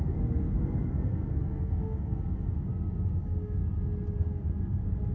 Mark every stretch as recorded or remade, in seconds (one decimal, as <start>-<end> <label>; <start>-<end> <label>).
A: 0.0-2.7 remade; 2.7-3.2 recorded; 3.2-3.6 remade; 3.6-4.3 recorded; 4.3-5.1 remade